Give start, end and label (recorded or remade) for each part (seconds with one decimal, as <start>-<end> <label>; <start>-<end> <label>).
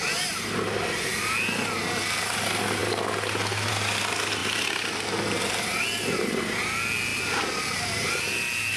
0.0-7.1 recorded; 7.1-8.1 remade; 8.1-8.8 recorded